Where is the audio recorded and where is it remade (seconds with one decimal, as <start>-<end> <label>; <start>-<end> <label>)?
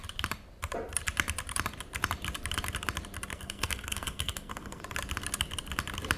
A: 0.0-3.3 recorded; 3.3-4.8 remade; 4.8-6.2 recorded